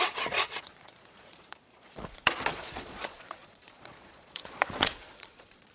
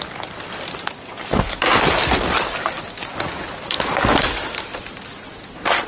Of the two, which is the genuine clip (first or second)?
second